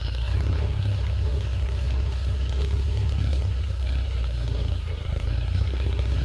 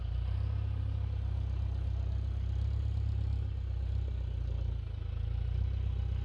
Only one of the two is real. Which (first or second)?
second